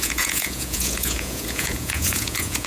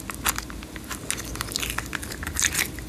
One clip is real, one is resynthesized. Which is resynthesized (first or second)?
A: first